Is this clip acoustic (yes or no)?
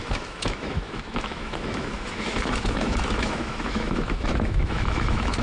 no